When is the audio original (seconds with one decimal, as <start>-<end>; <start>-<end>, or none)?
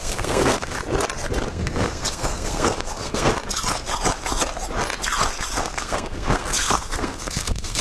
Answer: 0.8-1.5; 3.3-5.6